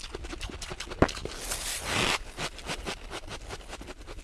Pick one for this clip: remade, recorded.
recorded